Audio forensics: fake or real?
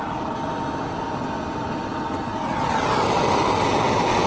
real